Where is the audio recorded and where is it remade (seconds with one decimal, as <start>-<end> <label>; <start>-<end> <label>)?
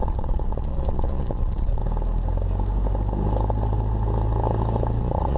0.0-1.8 remade; 1.8-5.0 recorded; 5.0-5.4 remade